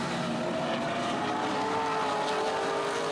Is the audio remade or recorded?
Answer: recorded